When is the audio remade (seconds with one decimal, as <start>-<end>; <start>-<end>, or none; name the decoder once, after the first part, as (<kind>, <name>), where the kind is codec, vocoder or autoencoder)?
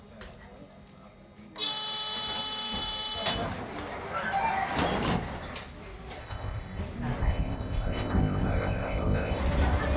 6.2-6.8 (codec, ZipCodec); 7.2-9.4